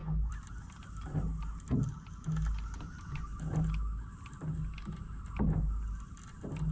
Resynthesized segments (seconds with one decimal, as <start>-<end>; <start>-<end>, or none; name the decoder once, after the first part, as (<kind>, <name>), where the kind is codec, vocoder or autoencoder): 0.0-0.5 (vocoder, BigVGAN v2)

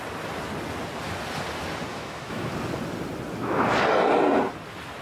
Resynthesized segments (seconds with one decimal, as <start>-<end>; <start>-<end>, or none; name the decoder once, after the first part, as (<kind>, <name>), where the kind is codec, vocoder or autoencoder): 1.9-2.5 (autoencoder, DAC-VAE)